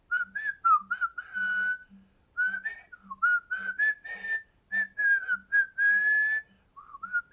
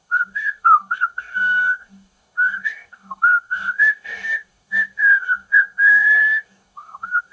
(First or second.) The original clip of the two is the first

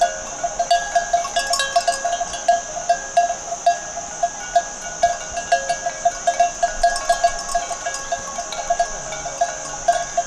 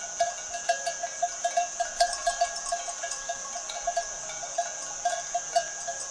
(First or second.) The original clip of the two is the first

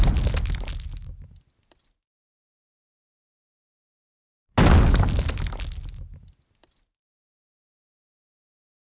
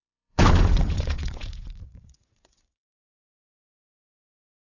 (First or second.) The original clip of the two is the first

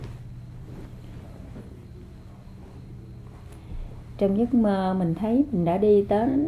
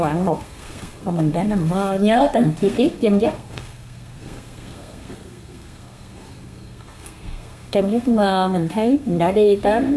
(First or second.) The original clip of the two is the first